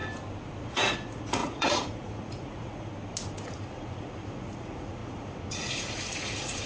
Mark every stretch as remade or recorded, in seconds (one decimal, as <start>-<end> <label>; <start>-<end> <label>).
0.0-0.6 recorded; 0.6-2.9 remade; 2.9-3.5 recorded; 3.5-6.7 remade

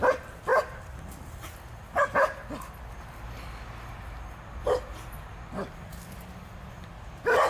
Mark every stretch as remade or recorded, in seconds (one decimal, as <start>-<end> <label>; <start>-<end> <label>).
0.0-7.5 recorded